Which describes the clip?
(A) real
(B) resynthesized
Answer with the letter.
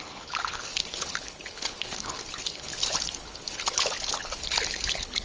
B